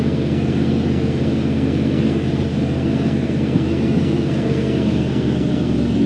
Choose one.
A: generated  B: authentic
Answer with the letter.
A